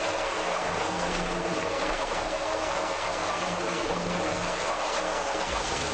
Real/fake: fake